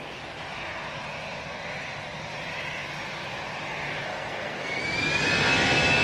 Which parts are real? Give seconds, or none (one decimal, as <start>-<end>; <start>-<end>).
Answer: 0.0-4.1; 4.8-6.0

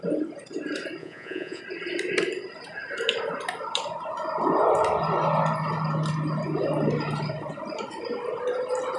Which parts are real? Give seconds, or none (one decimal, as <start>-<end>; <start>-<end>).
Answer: 0.0-1.0; 1.6-9.0

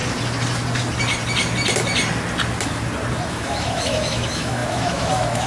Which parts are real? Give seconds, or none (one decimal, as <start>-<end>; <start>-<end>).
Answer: 0.0-3.3

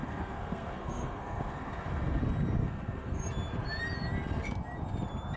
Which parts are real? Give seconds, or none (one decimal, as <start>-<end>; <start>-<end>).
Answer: 2.2-2.6; 3.2-5.4

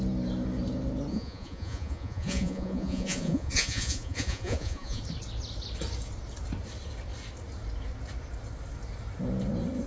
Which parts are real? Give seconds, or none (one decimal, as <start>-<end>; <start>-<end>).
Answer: 0.0-1.1; 5.0-9.9

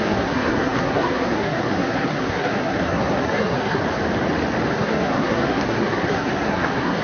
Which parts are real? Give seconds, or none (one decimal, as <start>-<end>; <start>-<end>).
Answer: 3.8-4.7